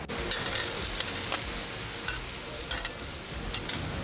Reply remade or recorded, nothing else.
recorded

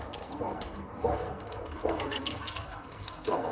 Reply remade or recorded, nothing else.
remade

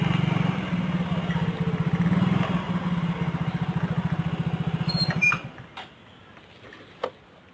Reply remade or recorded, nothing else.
recorded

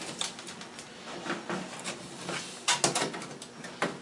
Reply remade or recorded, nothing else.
recorded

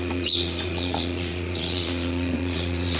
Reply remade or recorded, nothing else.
remade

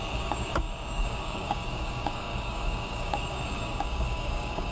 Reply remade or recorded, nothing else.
remade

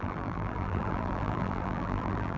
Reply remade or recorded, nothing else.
remade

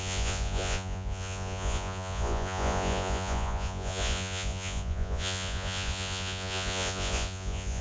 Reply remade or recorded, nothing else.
remade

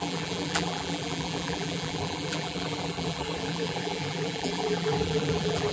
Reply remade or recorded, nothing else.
remade